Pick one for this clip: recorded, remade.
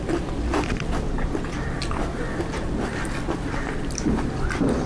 remade